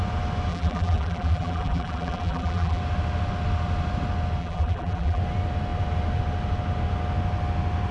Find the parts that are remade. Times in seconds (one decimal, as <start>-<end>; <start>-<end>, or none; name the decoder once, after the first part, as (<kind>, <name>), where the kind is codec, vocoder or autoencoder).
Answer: 0.5-2.8 (vocoder, BigVGAN v2); 4.4-5.2